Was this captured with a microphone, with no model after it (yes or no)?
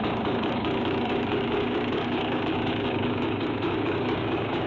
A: no